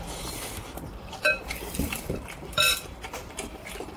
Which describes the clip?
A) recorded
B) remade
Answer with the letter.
B